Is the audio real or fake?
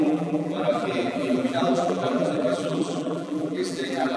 fake